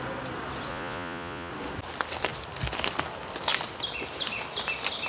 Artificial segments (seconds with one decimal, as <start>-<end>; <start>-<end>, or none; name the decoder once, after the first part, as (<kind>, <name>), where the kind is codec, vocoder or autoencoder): 0.7-1.5 (vocoder, Vocos)